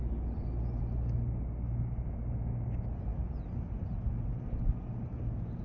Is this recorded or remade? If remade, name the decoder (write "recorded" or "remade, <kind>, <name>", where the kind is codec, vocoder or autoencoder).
recorded